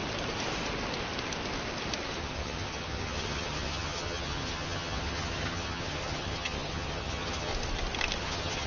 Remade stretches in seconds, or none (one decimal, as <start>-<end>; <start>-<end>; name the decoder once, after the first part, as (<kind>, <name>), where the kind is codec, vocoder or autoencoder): 2.2-7.5 (vocoder, HiFi-GAN); 8.2-8.7